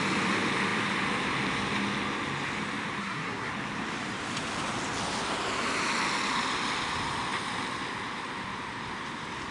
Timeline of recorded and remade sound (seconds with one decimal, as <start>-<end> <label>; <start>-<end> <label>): 0.0-3.0 recorded; 3.0-3.5 remade; 3.5-9.5 recorded